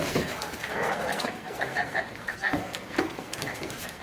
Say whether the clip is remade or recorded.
remade